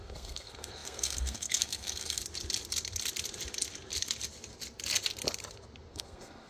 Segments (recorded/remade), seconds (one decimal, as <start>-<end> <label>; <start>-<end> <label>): 0.0-2.2 remade; 2.2-5.9 recorded; 5.9-6.5 remade